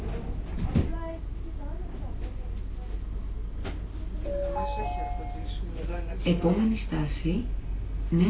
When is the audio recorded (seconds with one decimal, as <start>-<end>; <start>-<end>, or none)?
0.0-8.3